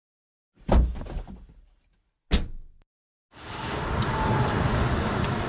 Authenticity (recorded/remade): recorded